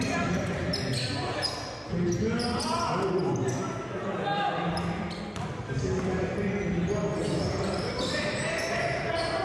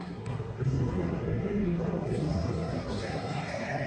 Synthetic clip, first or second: second